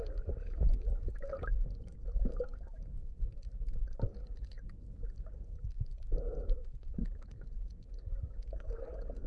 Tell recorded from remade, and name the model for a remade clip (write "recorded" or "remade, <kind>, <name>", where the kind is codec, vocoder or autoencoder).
remade, codec, DAC